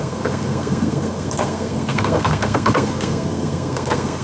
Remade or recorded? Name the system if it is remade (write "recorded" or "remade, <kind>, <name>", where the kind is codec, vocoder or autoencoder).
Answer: remade, codec, SNAC